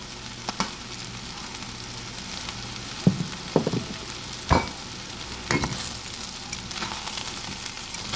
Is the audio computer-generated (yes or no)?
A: no